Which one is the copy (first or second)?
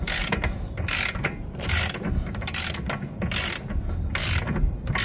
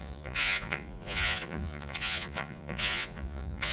second